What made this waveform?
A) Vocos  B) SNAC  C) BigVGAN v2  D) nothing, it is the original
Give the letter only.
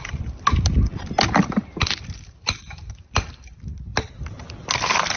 C